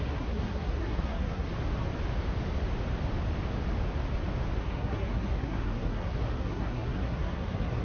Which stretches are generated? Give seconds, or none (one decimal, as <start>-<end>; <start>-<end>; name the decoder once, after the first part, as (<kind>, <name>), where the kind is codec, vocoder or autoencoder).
0.0-1.5 (codec, SNAC); 4.6-7.8